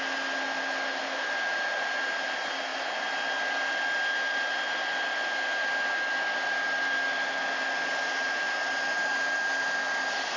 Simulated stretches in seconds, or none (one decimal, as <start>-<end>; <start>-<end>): none